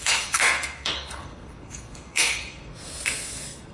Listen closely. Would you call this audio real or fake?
fake